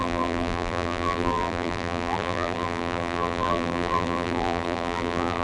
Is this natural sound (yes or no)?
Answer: no